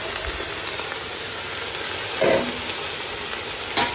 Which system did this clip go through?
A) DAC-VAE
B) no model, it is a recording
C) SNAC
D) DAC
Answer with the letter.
B